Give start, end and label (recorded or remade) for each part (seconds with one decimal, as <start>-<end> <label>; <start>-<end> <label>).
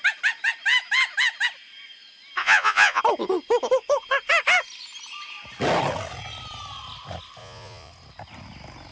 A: 0.0-2.4 recorded; 2.4-3.0 remade; 3.0-7.4 recorded; 7.4-7.9 remade; 7.9-8.9 recorded